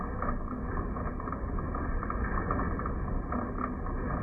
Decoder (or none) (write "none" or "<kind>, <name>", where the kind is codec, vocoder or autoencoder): none